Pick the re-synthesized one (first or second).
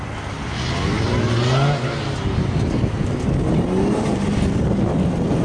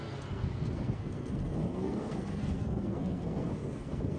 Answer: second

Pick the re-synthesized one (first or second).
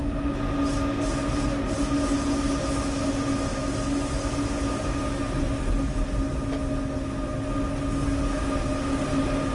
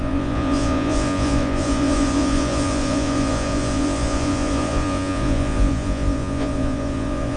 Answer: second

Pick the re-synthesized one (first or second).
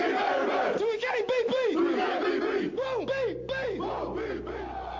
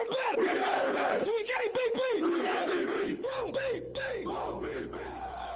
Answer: second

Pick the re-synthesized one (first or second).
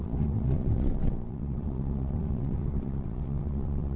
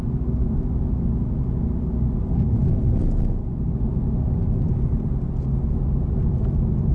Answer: first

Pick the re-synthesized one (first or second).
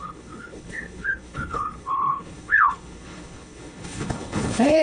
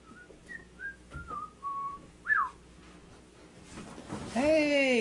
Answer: first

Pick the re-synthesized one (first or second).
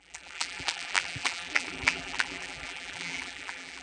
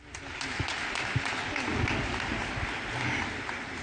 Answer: first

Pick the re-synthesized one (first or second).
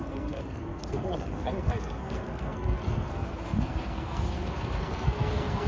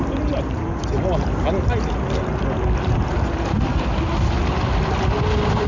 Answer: first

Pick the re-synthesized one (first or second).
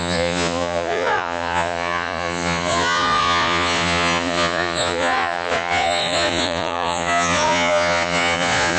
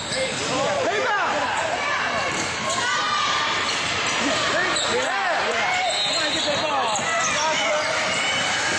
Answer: first